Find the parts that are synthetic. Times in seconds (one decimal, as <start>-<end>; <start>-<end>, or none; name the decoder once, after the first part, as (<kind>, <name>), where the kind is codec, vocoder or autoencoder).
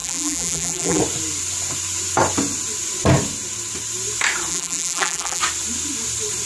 0.0-1.0 (vocoder, BigVGAN v2); 4.5-5.4